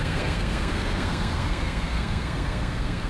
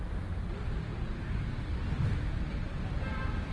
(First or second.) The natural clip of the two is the second